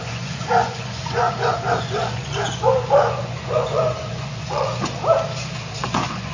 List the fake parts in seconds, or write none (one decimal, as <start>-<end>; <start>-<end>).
0.0-5.0; 5.8-6.3